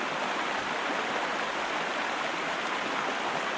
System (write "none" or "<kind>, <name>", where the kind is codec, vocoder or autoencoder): none